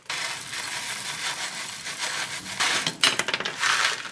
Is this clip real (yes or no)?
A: yes